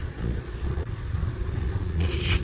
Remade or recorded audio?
remade